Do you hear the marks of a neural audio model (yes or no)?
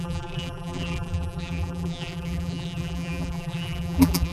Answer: yes